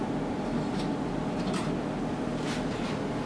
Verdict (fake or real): real